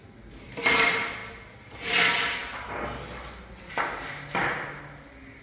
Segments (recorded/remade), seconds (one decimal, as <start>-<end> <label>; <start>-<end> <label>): 0.0-5.4 recorded